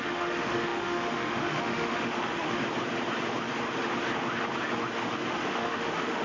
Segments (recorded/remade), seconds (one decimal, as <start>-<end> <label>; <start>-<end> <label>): 0.0-2.6 remade; 2.6-5.3 recorded; 5.3-6.2 remade